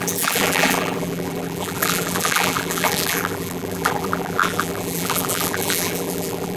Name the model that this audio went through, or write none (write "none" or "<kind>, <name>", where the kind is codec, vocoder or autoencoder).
vocoder, BigVGAN v2